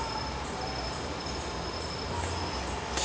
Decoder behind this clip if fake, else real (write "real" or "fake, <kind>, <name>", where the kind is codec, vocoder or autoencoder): real